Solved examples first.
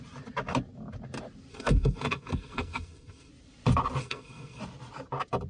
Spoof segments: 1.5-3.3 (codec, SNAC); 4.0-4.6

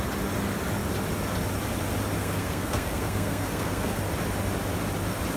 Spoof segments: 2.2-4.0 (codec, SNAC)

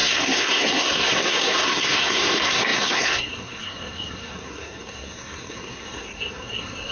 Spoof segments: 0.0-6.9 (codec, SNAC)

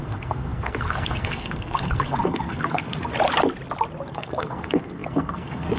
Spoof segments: 0.0-3.1 (codec, SNAC); 4.1-5.8

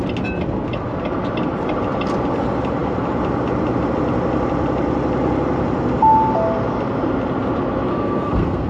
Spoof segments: 7.9-8.7 (codec, SNAC)